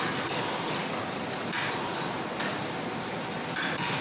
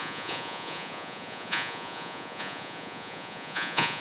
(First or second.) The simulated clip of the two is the second